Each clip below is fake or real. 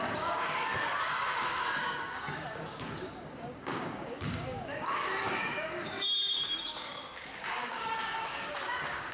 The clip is fake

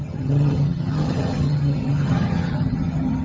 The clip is fake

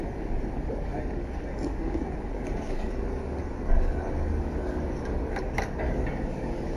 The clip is fake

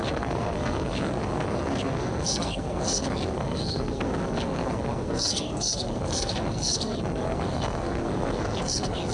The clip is fake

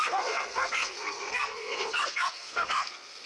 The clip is fake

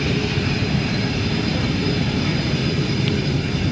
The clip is fake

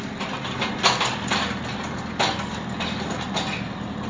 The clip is real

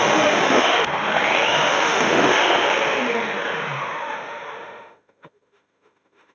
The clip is fake